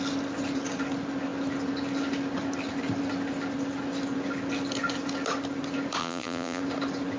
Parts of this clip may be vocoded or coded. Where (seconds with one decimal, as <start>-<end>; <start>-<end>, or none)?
6.0-6.6